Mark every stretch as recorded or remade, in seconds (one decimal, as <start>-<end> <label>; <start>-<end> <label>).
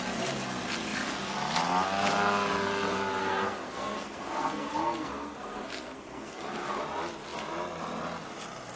0.0-3.2 recorded; 3.2-6.8 remade; 6.8-8.8 recorded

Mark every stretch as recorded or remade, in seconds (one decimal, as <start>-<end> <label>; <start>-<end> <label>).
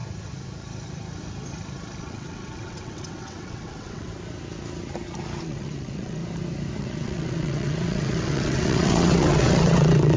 0.0-2.0 recorded; 2.0-4.1 remade; 4.1-5.4 recorded; 5.4-6.2 remade; 6.2-6.8 recorded; 6.8-10.2 remade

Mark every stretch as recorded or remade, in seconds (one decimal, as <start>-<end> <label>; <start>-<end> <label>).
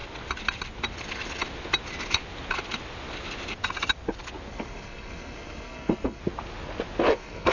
0.0-4.5 recorded; 4.5-6.2 remade; 6.2-7.1 recorded; 7.1-7.5 remade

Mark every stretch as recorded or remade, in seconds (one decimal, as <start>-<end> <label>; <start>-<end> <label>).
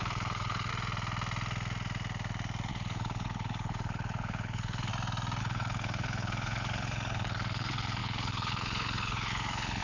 0.0-0.7 remade; 0.7-2.7 recorded; 2.7-4.9 remade; 4.9-5.4 recorded; 5.4-9.8 remade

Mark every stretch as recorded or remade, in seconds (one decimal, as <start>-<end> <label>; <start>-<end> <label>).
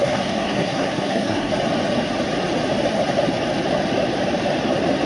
0.0-1.5 remade; 1.5-5.1 recorded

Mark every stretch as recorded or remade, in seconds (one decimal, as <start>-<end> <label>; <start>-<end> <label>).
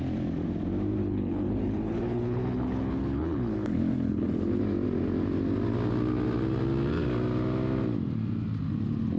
0.0-1.0 recorded; 1.0-4.6 remade; 4.6-9.2 recorded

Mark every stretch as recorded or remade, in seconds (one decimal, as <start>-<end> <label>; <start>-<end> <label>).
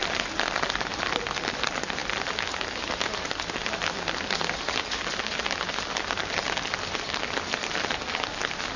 0.0-8.8 recorded